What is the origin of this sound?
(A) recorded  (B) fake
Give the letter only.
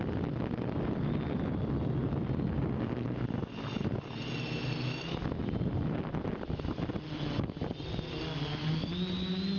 A